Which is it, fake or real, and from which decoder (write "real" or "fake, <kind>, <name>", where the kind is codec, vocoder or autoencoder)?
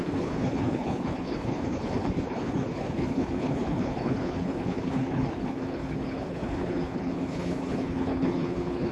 fake, codec, HILCodec